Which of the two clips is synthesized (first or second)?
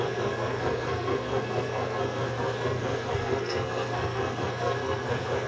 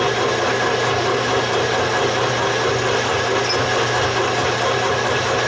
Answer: first